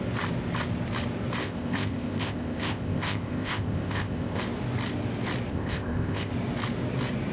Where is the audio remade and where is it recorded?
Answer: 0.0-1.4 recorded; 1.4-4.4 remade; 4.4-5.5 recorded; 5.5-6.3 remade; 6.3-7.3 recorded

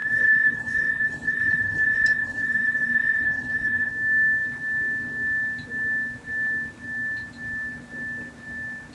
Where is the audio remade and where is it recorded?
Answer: 0.0-3.9 remade; 3.9-8.9 recorded

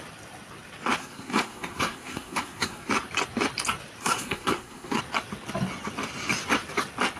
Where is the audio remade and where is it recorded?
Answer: 0.0-1.0 recorded; 1.0-2.9 remade; 2.9-4.0 recorded; 4.0-5.0 remade; 5.0-7.2 recorded

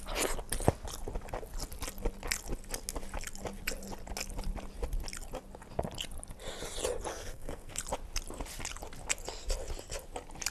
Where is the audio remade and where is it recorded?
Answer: 0.0-7.1 recorded; 7.1-7.8 remade; 7.8-10.5 recorded

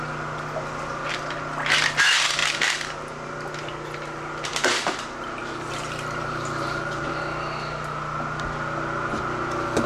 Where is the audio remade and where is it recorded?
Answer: 0.0-2.4 recorded; 2.4-3.1 remade; 3.1-4.5 recorded; 4.5-7.2 remade; 7.2-9.9 recorded

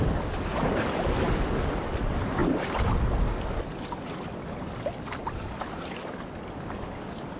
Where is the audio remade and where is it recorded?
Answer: 0.0-7.4 recorded

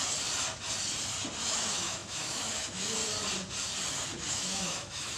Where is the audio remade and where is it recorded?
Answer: 0.0-1.4 recorded; 1.4-3.0 remade; 3.0-4.3 recorded; 4.3-5.2 remade